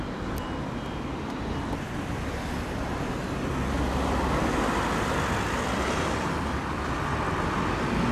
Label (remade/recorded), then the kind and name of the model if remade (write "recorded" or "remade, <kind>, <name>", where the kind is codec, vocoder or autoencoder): recorded